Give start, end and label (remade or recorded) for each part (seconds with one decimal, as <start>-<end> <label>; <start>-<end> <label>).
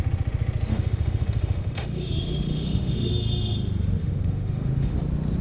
0.0-0.7 recorded; 0.7-3.1 remade; 3.1-4.0 recorded; 4.0-5.0 remade; 5.0-5.4 recorded